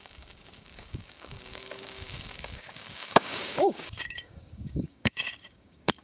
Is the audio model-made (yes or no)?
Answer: yes